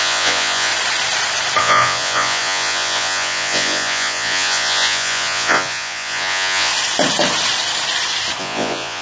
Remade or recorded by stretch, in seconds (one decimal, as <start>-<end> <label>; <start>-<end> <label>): 0.0-0.7 remade; 0.7-1.6 recorded; 1.6-6.7 remade; 6.7-8.4 recorded; 8.4-9.0 remade